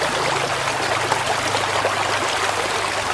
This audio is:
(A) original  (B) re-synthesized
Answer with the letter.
A